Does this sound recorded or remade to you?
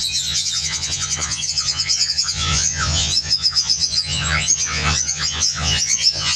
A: remade